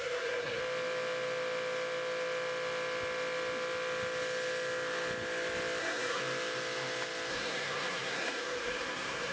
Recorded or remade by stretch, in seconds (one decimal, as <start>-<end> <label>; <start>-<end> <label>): 0.0-0.6 remade; 0.6-5.8 recorded; 5.8-6.2 remade; 6.2-7.3 recorded; 7.3-9.3 remade